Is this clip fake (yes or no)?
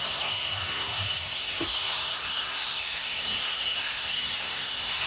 yes